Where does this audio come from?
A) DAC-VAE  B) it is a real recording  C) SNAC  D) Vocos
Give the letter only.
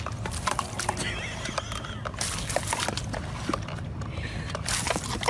B